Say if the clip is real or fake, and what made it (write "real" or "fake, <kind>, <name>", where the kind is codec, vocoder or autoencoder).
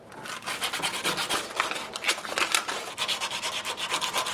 real